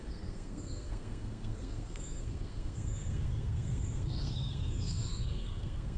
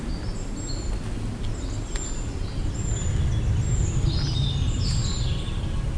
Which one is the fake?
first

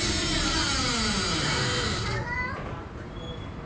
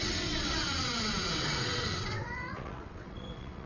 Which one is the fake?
second